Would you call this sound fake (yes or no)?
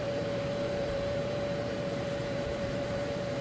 yes